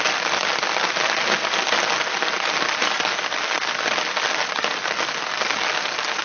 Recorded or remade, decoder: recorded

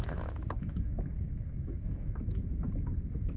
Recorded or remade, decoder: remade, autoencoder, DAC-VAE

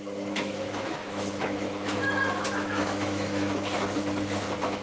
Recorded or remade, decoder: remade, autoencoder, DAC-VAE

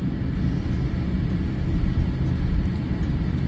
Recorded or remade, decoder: recorded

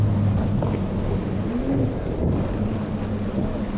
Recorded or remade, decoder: recorded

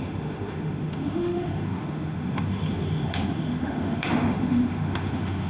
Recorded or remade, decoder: remade, autoencoder, DAC-VAE